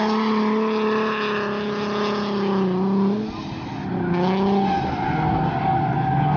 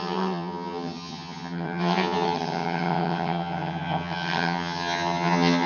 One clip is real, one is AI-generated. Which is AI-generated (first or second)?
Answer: second